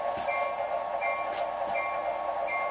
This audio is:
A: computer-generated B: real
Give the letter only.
B